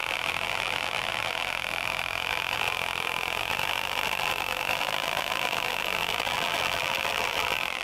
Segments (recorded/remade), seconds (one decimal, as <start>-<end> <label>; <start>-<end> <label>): 0.0-7.8 remade